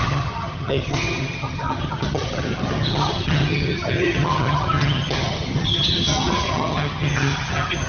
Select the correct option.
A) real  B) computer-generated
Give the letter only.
B